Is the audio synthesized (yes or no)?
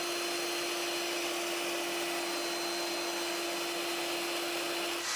no